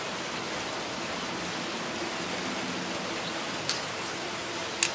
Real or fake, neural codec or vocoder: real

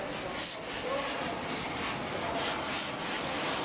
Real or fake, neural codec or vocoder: real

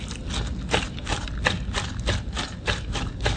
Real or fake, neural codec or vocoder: real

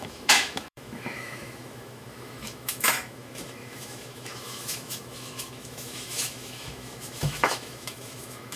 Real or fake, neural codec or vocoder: fake, autoencoder, DAC-VAE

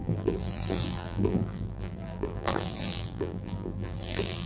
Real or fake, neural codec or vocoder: fake, vocoder, BigVGAN v2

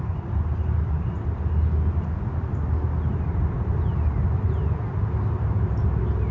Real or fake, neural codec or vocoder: real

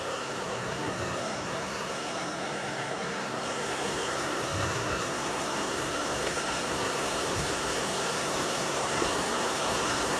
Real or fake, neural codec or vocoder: fake, codec, SNAC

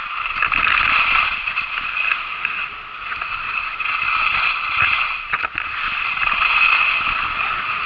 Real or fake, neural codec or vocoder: real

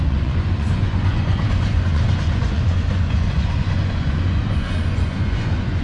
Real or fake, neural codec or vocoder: fake, vocoder, Vocos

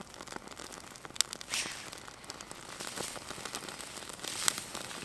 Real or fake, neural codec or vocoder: real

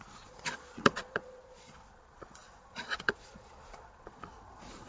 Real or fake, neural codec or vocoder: fake, vocoder, Vocos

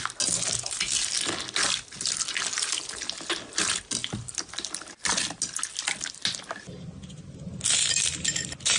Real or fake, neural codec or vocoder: real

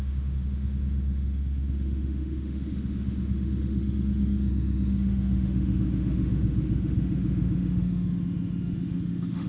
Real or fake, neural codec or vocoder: fake, autoencoder, DAC-VAE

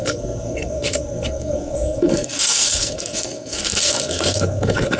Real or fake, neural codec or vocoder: fake, codec, SNAC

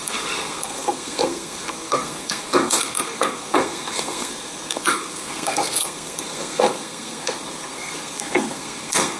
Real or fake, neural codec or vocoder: fake, codec, SNAC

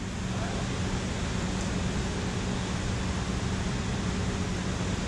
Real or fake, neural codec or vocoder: real